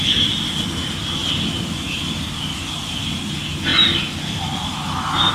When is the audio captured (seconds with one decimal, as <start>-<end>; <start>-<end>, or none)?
0.0-5.3